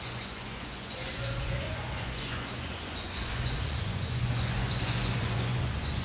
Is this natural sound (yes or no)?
no